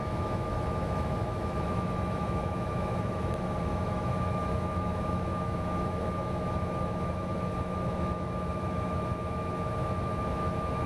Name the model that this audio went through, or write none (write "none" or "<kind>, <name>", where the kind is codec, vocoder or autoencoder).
autoencoder, DAC-VAE